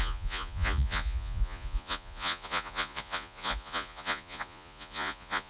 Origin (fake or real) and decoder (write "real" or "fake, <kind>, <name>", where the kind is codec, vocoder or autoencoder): fake, vocoder, Vocos